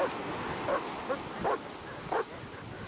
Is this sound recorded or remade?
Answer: recorded